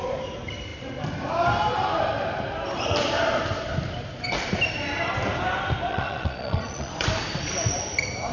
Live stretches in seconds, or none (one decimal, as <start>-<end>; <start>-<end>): 0.0-5.9; 6.9-8.3